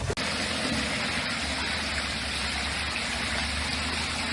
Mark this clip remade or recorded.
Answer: recorded